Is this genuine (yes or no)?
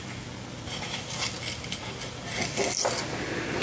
yes